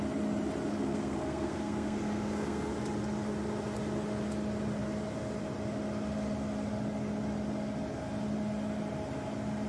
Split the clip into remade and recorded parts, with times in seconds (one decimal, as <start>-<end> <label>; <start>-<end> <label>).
0.0-0.7 recorded; 0.7-2.7 remade; 2.7-9.7 recorded